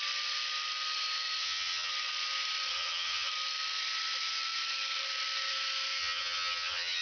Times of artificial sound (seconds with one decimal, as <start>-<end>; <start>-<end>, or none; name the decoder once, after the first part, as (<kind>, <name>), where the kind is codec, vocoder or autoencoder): 1.4-1.9 (vocoder, HiFi-GAN); 2.7-3.3; 6.0-7.0